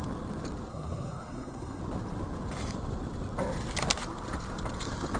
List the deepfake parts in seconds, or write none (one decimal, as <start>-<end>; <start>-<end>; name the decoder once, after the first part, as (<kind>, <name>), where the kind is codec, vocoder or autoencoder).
0.7-1.8 (codec, SNAC)